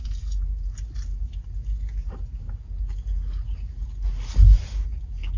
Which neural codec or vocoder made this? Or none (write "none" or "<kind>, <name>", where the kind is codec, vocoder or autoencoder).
none